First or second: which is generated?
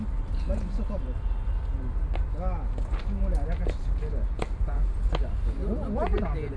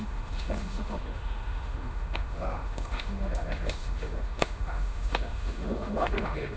second